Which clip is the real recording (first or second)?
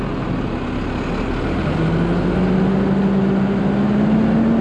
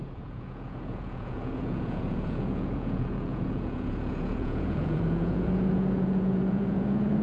first